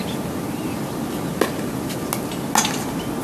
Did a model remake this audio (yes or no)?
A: no